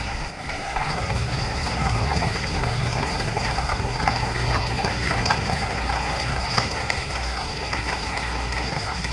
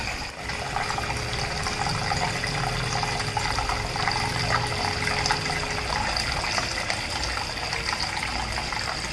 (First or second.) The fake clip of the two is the first